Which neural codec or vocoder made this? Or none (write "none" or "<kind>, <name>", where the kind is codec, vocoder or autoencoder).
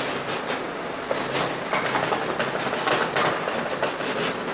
none